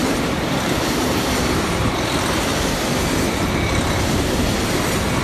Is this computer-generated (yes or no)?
no